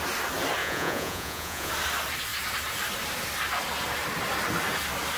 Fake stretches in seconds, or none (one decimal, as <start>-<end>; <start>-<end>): 0.6-1.7